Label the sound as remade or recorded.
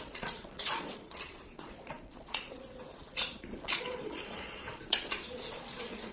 remade